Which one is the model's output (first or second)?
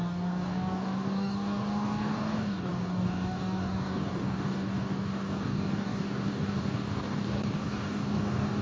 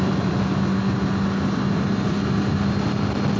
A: first